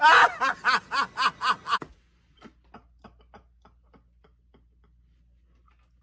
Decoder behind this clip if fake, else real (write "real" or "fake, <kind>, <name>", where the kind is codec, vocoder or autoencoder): real